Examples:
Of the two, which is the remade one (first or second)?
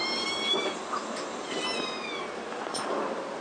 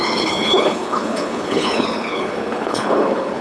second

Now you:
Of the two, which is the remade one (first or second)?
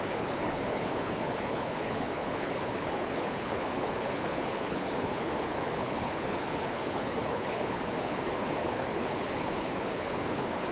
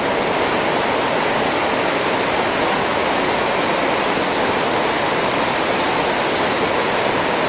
first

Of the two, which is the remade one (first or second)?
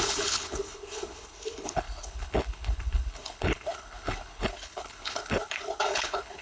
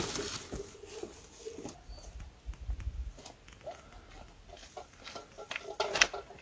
first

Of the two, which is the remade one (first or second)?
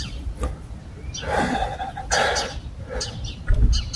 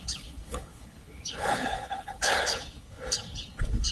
second